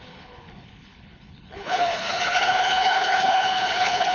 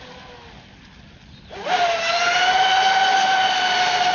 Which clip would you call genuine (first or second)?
second